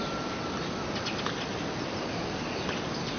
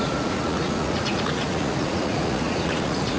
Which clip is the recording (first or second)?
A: first